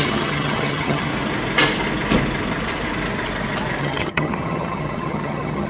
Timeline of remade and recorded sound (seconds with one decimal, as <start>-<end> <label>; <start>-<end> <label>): 0.0-1.1 remade; 1.1-3.8 recorded; 3.8-5.7 remade